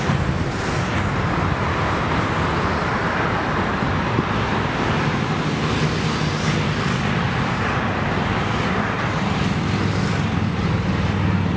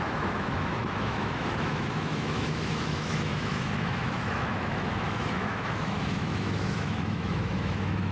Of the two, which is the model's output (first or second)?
second